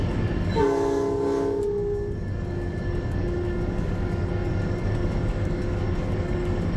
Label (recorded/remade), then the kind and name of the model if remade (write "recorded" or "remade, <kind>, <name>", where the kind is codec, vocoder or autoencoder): remade, codec, DAC